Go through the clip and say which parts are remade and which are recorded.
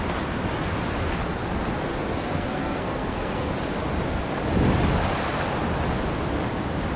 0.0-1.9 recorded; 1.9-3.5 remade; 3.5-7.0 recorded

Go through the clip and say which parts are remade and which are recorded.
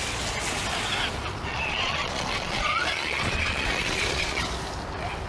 0.0-1.5 recorded; 1.5-4.4 remade; 4.4-5.3 recorded